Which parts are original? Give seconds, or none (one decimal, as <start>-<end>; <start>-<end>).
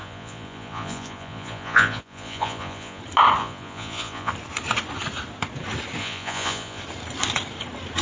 3.0-3.4; 4.3-6.0; 6.8-8.0